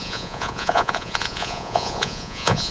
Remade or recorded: remade